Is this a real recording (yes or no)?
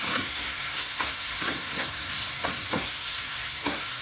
no